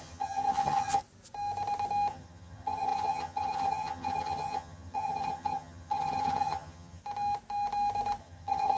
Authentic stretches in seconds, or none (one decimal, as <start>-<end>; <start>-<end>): 1.0-2.1; 7.0-8.2